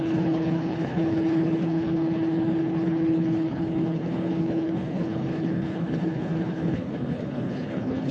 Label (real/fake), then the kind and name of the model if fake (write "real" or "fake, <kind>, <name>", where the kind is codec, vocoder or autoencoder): fake, codec, HILCodec